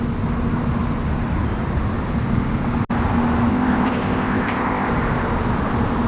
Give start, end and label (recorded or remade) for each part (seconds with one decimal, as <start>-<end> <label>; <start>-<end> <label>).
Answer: 0.0-3.5 recorded; 3.5-4.9 remade; 4.9-6.1 recorded